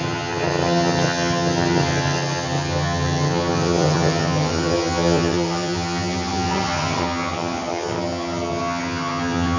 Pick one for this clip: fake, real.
fake